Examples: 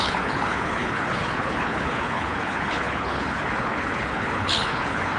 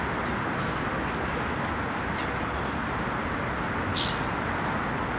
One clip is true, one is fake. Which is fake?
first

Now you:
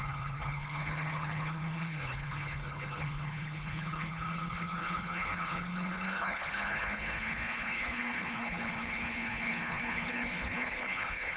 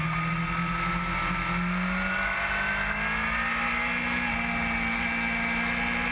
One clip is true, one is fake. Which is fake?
first